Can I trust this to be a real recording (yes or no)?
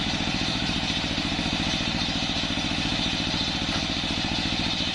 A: no